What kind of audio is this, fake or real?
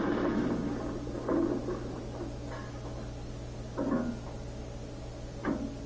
real